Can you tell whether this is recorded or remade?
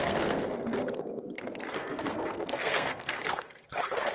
remade